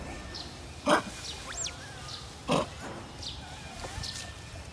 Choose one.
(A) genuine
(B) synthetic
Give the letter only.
A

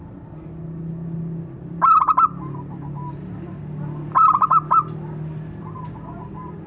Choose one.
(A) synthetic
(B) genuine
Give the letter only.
B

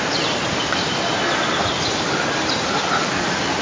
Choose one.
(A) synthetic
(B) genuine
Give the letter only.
B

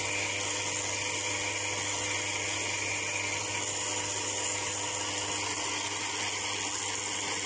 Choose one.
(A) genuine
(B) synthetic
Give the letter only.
A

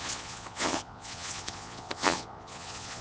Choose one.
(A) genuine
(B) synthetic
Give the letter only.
B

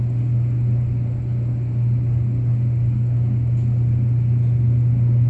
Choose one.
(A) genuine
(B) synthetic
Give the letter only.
A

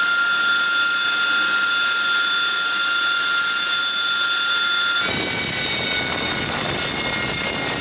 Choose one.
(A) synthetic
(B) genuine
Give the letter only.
B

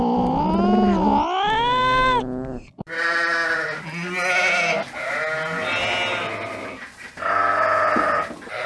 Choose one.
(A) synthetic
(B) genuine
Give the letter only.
B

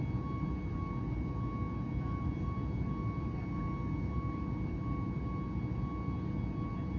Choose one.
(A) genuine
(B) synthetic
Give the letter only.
A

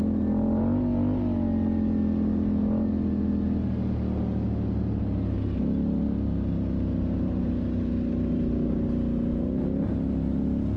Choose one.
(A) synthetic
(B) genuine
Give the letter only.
B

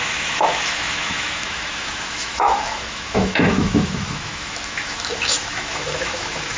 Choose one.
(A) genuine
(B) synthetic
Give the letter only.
B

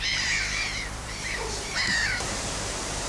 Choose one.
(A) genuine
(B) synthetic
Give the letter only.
B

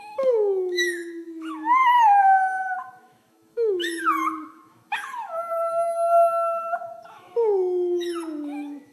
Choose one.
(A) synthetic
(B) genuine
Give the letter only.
A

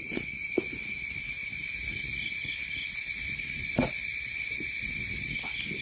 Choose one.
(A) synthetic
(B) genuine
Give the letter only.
B